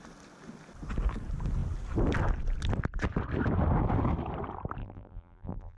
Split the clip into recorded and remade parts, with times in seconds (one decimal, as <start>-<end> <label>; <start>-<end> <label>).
0.0-4.8 recorded; 4.8-5.8 remade

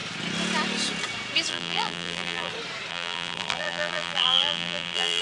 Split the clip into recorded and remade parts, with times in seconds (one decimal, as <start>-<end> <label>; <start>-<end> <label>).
0.0-1.5 recorded; 1.5-2.5 remade; 2.5-2.9 recorded; 2.9-5.2 remade

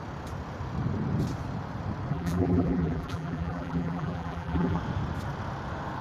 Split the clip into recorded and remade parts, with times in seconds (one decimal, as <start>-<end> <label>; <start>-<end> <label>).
0.0-2.1 recorded; 2.1-4.8 remade; 4.8-6.0 recorded

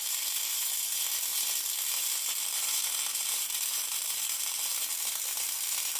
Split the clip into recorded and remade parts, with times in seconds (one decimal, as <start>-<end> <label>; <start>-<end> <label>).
0.0-6.0 remade

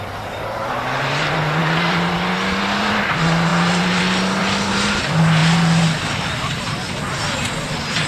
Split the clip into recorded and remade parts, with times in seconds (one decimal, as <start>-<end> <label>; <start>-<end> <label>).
0.0-4.4 recorded; 4.4-5.0 remade; 5.0-8.1 recorded

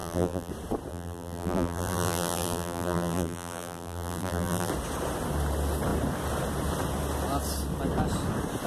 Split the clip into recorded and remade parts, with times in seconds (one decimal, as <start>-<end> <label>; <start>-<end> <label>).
0.0-0.5 remade; 0.5-0.9 recorded; 0.9-4.7 remade; 4.7-8.7 recorded

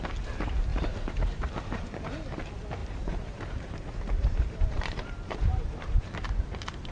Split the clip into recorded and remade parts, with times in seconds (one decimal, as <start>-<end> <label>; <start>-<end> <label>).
0.0-0.7 recorded; 0.7-1.5 remade; 1.5-2.8 recorded; 2.8-6.9 remade